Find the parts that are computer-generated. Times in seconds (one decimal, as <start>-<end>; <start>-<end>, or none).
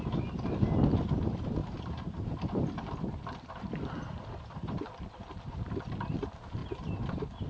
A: 1.6-5.8